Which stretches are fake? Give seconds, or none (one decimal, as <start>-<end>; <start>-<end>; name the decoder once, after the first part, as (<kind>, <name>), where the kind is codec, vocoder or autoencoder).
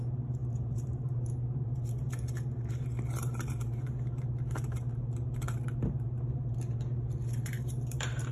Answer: 0.0-8.3 (vocoder, BigVGAN v2)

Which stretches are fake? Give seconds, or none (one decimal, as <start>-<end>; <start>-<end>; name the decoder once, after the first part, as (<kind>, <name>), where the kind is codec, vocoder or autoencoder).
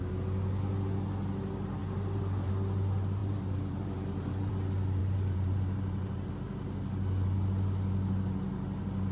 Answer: 1.8-2.5 (vocoder, BigVGAN v2); 3.2-4.5; 5.0-6.3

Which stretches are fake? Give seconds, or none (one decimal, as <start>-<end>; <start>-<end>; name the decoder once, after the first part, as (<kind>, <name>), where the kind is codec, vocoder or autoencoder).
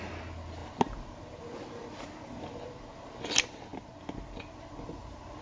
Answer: none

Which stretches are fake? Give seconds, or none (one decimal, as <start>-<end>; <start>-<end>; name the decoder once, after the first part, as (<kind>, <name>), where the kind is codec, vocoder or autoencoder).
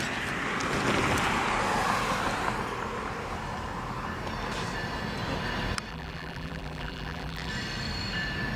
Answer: 5.9-7.5 (vocoder, BigVGAN v2)